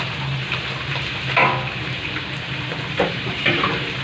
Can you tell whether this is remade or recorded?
remade